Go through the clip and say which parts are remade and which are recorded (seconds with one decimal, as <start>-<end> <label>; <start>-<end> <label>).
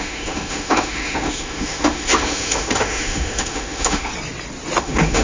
0.0-4.1 remade; 4.1-4.8 recorded; 4.8-5.2 remade